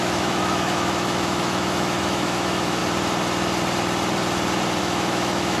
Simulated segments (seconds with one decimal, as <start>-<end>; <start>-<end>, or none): 0.0-2.8; 4.8-5.6